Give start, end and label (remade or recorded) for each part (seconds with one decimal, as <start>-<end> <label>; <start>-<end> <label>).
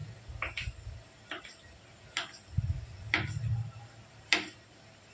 0.0-5.1 recorded